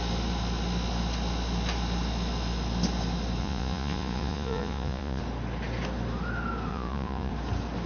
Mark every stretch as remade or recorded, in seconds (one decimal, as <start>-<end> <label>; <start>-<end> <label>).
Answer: 0.0-3.4 recorded; 3.4-5.2 remade; 5.2-6.7 recorded; 6.7-7.3 remade; 7.3-7.9 recorded